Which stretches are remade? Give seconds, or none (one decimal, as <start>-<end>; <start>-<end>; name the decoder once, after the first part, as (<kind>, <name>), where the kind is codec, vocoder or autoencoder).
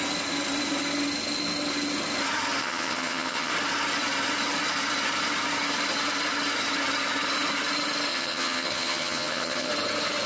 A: 2.6-3.5 (vocoder, HiFi-GAN); 8.1-9.7